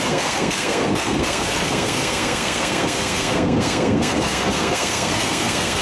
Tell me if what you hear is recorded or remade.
remade